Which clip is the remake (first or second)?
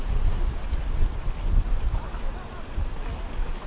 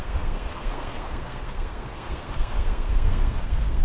second